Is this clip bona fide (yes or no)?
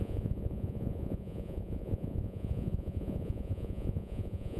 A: no